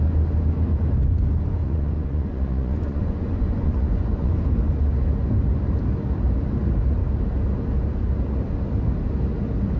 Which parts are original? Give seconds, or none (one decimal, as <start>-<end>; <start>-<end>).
0.0-1.6; 4.3-9.8